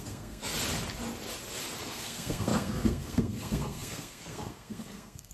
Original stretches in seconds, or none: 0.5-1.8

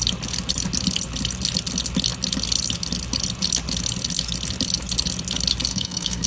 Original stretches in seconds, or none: 0.0-5.7

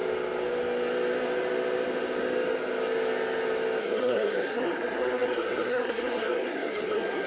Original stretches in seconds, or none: 0.0-3.8